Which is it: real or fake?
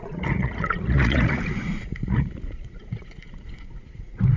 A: fake